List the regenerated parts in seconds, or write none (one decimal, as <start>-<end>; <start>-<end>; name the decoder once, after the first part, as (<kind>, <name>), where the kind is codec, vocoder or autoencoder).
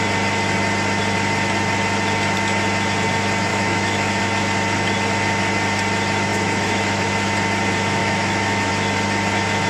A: 3.5-4.2 (autoencoder, DAC-VAE); 6.3-7.1; 8.0-8.7